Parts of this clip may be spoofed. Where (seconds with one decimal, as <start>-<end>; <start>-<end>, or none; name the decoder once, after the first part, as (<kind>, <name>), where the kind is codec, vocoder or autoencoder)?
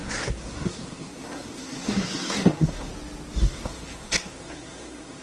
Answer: 0.0-2.9 (codec, SNAC); 3.4-5.2